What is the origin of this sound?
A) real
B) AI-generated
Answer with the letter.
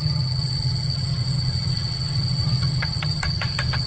B